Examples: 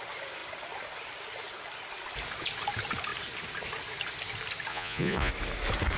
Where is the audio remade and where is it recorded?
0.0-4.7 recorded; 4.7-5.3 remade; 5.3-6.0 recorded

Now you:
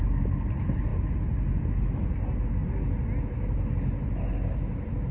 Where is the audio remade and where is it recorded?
0.0-5.1 recorded

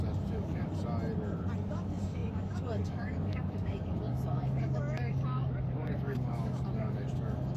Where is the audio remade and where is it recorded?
0.0-0.7 remade; 0.7-1.7 recorded; 1.7-7.6 remade

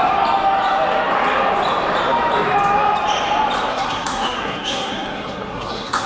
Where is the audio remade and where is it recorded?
0.0-3.7 recorded; 3.7-6.1 remade

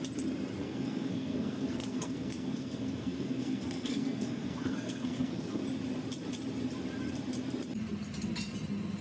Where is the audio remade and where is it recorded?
0.0-0.6 recorded; 0.6-5.6 remade; 5.6-9.0 recorded

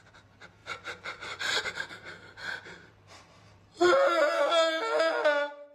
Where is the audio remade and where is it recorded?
0.0-0.6 recorded; 0.6-3.9 remade; 3.9-5.7 recorded

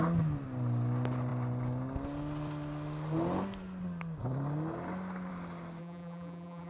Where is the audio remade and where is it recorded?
0.0-5.8 recorded; 5.8-6.7 remade